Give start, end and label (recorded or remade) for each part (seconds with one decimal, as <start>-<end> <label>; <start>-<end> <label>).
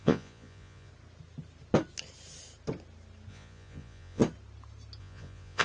0.0-0.9 remade; 0.9-3.3 recorded; 3.3-4.2 remade; 4.2-5.0 recorded; 5.0-5.6 remade